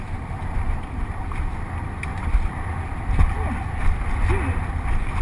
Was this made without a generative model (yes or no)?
yes